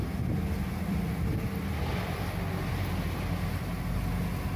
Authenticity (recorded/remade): recorded